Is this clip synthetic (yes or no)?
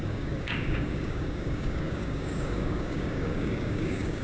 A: yes